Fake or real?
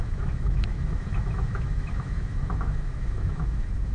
fake